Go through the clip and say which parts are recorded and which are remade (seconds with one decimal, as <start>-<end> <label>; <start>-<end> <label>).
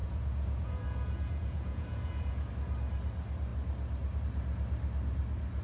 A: 0.0-2.5 remade; 2.5-5.6 recorded